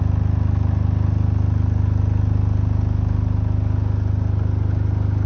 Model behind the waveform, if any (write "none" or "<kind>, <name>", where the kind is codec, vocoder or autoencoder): none